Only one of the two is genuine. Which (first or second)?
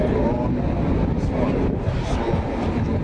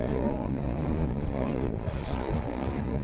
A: first